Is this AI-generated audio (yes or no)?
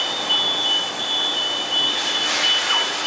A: no